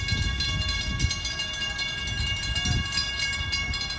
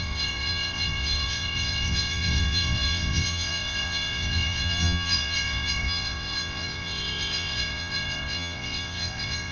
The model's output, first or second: second